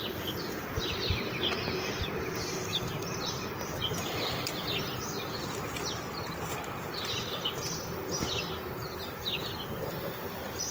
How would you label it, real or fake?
real